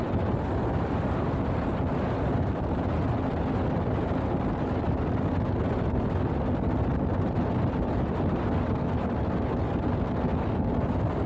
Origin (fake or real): real